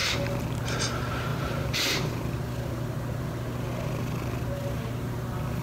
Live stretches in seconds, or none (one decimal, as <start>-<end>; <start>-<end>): 0.0-1.3; 2.2-5.6